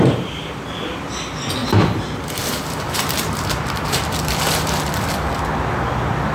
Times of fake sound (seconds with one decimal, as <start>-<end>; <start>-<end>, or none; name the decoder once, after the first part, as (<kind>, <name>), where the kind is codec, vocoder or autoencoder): 1.6-5.1 (vocoder, BigVGAN v2)